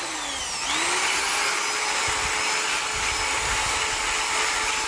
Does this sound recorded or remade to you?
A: recorded